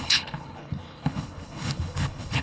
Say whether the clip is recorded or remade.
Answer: remade